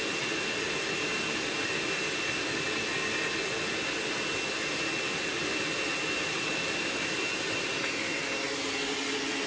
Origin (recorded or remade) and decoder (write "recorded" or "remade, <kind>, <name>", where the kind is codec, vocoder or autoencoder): recorded